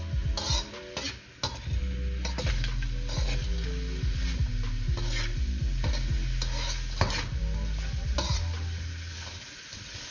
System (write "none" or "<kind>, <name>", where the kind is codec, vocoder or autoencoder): none